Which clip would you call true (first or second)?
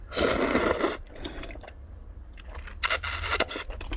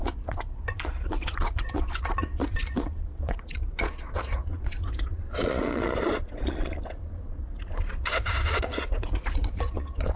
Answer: first